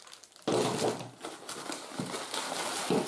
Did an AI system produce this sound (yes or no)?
no